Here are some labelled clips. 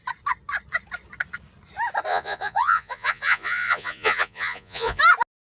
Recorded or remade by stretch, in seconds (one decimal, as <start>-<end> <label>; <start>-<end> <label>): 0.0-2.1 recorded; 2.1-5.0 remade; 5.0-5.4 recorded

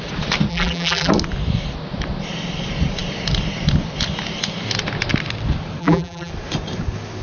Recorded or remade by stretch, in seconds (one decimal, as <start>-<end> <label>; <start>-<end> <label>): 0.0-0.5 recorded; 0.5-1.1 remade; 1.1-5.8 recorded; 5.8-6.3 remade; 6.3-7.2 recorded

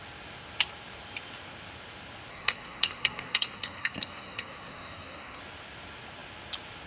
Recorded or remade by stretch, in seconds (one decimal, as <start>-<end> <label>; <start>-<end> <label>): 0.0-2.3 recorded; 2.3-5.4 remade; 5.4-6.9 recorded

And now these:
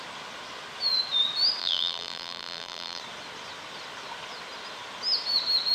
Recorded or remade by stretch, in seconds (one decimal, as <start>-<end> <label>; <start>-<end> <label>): 0.0-1.6 recorded; 1.6-3.0 remade; 3.0-5.7 recorded

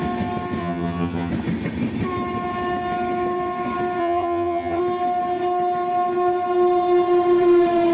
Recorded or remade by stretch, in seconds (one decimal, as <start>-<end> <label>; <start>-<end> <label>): 0.0-0.6 recorded; 0.6-1.3 remade; 1.3-4.0 recorded; 4.0-4.8 remade; 4.8-7.9 recorded

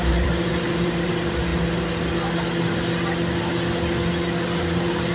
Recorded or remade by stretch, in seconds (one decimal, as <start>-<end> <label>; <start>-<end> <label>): 0.0-1.5 remade; 1.5-4.6 recorded; 4.6-5.1 remade

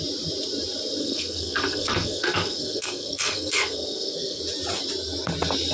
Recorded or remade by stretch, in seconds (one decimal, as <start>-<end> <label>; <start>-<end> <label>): 0.0-1.0 recorded; 1.0-4.4 remade; 4.4-5.7 recorded

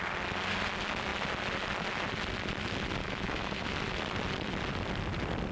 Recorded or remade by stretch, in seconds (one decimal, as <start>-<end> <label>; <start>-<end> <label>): 0.0-3.0 recorded; 3.0-3.7 remade; 3.7-5.5 recorded